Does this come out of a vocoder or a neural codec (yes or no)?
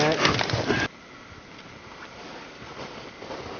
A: no